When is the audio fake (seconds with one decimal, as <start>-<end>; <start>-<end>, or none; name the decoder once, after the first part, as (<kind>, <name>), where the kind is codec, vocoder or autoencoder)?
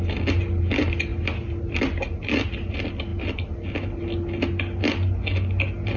none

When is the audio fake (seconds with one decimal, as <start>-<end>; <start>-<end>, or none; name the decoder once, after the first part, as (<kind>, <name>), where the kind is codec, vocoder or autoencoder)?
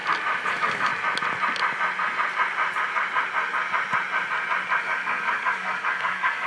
0.5-0.9 (codec, DAC); 4.8-6.5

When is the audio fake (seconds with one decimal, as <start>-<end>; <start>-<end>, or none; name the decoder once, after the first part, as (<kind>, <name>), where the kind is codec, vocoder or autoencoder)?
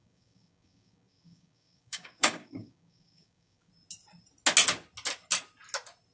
0.0-3.7 (codec, DAC)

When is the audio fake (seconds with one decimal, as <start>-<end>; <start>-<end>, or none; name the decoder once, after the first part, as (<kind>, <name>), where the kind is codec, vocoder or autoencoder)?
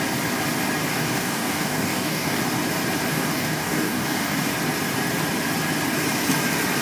0.9-2.4 (codec, DAC); 3.1-4.5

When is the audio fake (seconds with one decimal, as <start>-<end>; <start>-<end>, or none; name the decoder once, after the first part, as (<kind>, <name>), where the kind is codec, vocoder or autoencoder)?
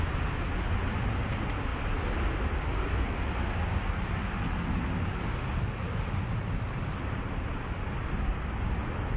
none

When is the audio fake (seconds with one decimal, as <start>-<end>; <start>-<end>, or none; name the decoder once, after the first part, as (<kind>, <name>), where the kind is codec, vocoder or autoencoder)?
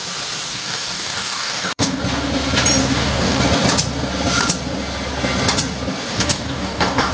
0.5-2.0 (codec, DAC); 2.8-3.4; 6.1-7.1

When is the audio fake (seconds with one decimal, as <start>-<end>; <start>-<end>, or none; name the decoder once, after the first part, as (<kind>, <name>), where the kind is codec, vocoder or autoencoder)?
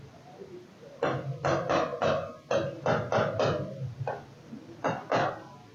none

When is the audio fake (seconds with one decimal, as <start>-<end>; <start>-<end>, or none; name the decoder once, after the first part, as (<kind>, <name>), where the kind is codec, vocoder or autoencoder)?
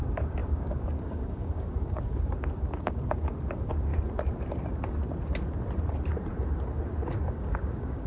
0.0-3.9 (codec, DAC); 7.4-8.1